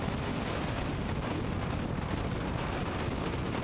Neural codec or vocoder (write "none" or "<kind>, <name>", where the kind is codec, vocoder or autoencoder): none